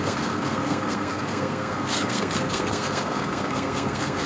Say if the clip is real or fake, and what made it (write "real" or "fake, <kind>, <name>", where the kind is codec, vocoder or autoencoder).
fake, codec, SNAC